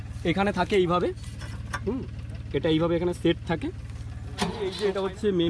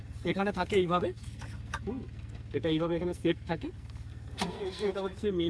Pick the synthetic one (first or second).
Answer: second